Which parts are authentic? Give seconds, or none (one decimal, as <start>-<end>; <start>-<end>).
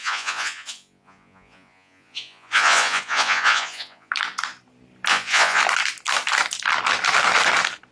4.1-5.1; 5.6-7.9